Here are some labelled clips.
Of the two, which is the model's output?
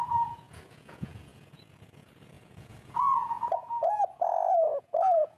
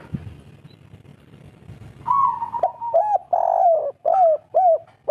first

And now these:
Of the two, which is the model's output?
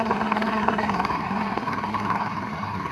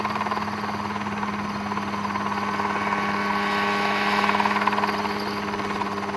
first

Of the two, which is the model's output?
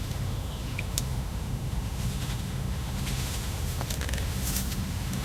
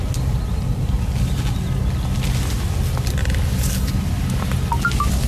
first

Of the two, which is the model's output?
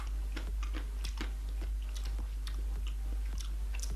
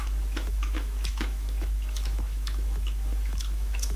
second